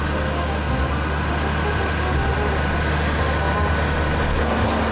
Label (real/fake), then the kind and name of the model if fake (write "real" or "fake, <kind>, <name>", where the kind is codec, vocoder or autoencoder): real